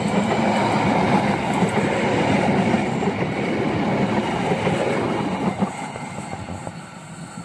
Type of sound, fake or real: real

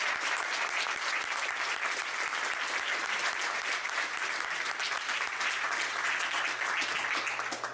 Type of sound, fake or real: real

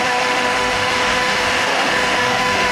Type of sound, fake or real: fake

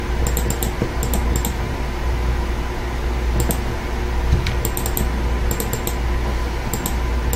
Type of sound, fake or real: real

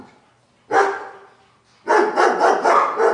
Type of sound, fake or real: real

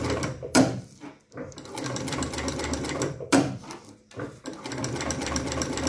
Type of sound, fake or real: fake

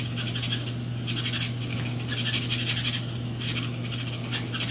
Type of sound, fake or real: real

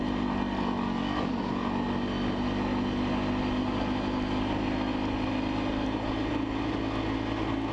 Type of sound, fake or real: real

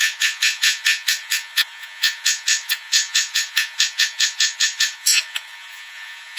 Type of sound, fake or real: fake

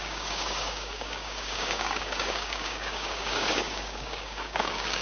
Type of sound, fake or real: fake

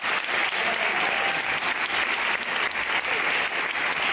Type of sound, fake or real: real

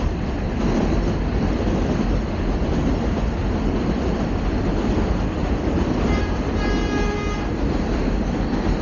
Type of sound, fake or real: real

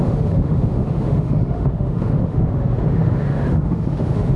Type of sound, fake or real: fake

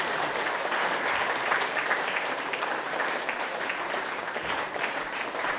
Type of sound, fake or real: fake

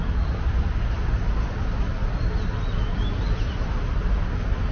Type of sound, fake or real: real